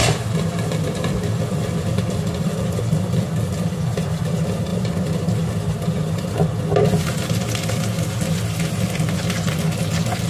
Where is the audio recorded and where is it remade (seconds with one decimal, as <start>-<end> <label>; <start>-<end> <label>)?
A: 0.0-4.2 remade; 4.2-4.7 recorded; 4.7-5.5 remade; 5.5-6.0 recorded; 6.0-6.6 remade; 6.6-10.3 recorded